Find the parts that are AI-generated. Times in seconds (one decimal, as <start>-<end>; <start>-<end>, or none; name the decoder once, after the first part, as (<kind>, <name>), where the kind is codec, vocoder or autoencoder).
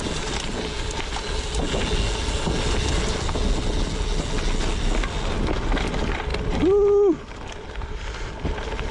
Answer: none